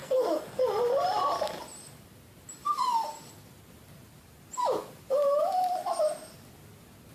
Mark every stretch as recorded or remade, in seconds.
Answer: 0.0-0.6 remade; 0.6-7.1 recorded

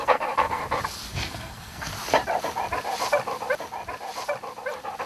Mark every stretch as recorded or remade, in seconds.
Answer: 0.0-0.6 remade; 0.6-1.1 recorded; 1.1-1.9 remade; 1.9-5.1 recorded

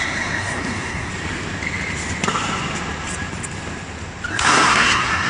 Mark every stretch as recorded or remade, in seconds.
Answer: 0.0-1.1 remade; 1.1-4.3 recorded; 4.3-5.3 remade

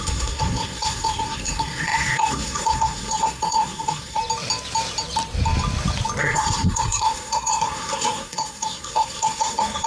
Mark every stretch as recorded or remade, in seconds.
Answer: 0.0-4.2 remade; 4.2-6.2 recorded; 6.2-9.9 remade

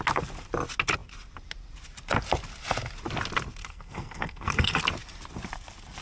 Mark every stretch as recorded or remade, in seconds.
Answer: 0.0-3.6 recorded; 3.6-4.8 remade; 4.8-6.0 recorded

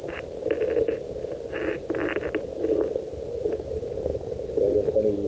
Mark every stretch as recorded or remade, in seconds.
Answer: 0.0-5.3 recorded

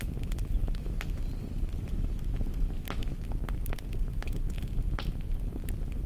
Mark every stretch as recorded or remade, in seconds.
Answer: 0.0-6.1 recorded